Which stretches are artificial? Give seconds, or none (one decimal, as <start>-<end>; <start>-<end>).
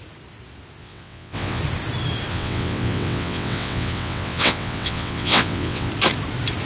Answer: 0.8-1.6; 2.3-5.9